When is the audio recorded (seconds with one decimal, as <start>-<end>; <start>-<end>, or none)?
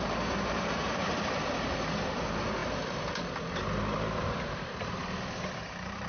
2.6-3.8; 5.0-5.6